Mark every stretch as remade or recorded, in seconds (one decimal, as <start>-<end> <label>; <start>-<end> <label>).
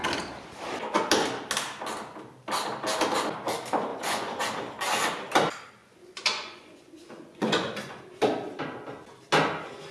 0.0-3.9 recorded; 3.9-4.4 remade; 4.4-5.8 recorded; 5.8-8.0 remade; 8.0-9.9 recorded